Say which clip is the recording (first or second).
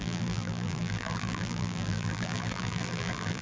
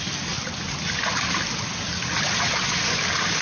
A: second